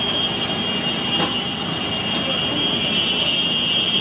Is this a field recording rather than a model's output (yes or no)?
yes